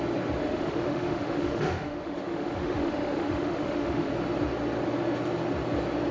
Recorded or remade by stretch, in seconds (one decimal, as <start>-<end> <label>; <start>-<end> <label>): 0.0-0.4 recorded; 0.4-4.1 remade; 4.1-6.1 recorded